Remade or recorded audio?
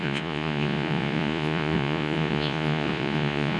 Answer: remade